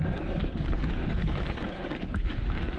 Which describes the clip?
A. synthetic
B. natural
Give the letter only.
A